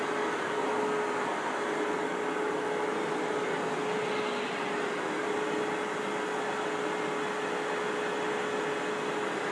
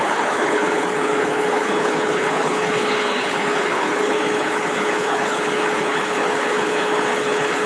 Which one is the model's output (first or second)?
second